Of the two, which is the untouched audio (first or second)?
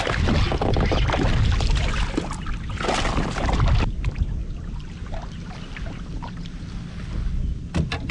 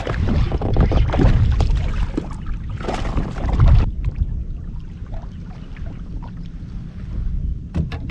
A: first